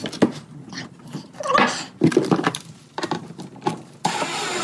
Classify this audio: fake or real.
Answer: real